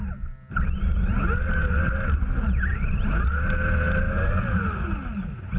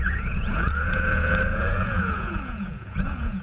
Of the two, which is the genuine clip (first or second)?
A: first